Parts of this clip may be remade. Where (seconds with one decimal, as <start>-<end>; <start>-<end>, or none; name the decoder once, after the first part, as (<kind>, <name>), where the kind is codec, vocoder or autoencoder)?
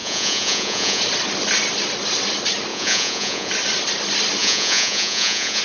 0.0-1.0 (vocoder, Vocos); 2.7-3.5; 4.4-5.6